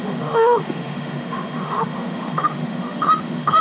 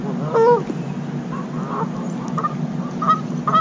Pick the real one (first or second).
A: second